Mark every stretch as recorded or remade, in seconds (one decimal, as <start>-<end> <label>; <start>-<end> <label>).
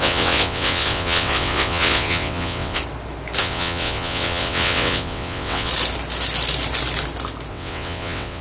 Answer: 0.0-2.8 remade; 2.8-3.4 recorded; 3.4-5.7 remade; 5.7-7.5 recorded; 7.5-8.4 remade